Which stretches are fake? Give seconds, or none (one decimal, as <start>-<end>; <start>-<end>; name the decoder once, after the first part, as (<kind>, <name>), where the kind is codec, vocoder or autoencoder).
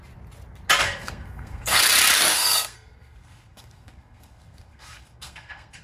0.8-1.8 (codec, SNAC); 2.3-5.8